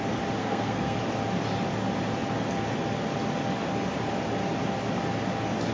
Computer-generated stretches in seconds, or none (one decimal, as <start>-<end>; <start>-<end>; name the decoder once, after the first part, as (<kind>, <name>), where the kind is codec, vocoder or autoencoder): 0.4-1.0 (codec, SNAC)